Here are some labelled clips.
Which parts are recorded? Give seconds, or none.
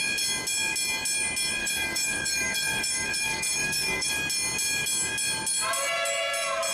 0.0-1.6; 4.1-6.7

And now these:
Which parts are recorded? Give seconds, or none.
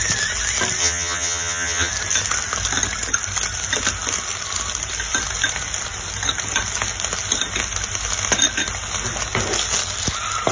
0.0-0.8; 1.9-10.5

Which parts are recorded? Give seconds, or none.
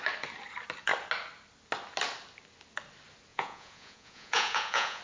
0.0-3.3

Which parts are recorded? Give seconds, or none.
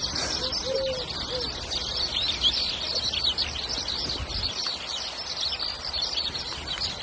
0.0-7.0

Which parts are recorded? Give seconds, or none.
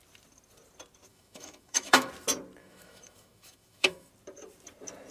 0.0-1.1; 2.1-2.6; 4.1-5.1